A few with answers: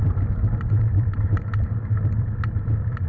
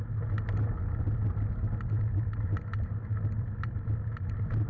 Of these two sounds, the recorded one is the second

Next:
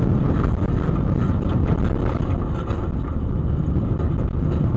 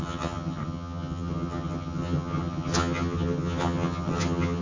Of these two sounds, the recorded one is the first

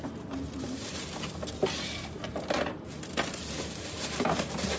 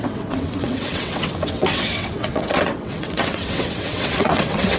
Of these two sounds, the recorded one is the first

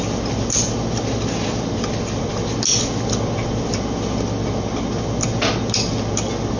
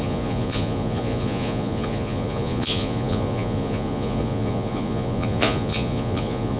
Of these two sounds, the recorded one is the first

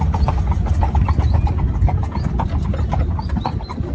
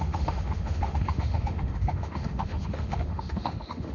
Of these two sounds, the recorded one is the first